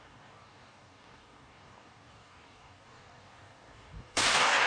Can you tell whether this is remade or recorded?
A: remade